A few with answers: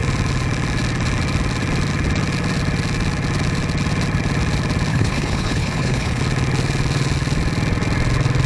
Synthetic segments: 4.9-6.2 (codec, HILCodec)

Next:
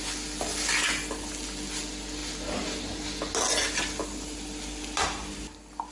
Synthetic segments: none

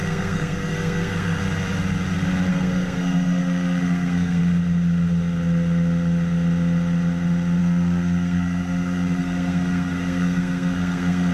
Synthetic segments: 0.0-1.4 (codec, SNAC); 2.5-4.4; 7.6-11.3

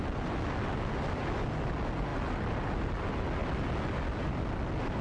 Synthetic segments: none

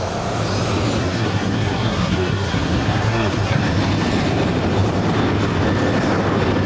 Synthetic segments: 1.0-3.6 (codec, SNAC)